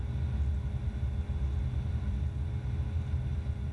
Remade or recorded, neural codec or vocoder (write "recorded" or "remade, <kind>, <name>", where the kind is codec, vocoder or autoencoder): recorded